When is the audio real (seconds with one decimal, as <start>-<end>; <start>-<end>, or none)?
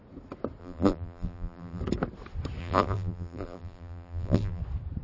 0.0-0.6; 1.8-2.6; 4.6-5.0